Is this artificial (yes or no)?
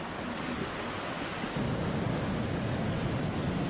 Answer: no